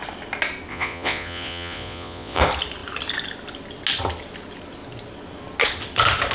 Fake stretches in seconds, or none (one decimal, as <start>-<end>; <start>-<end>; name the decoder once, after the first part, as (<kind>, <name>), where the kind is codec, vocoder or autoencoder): 0.7-2.4 (vocoder, Vocos)